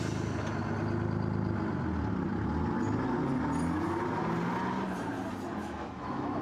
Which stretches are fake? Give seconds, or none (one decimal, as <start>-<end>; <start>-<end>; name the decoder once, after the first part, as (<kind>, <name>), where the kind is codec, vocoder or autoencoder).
5.6-6.4 (autoencoder, DAC-VAE)